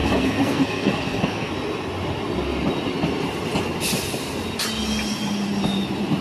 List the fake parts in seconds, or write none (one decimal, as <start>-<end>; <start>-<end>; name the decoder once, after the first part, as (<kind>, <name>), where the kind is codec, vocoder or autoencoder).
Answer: 0.0-1.5 (codec, SNAC)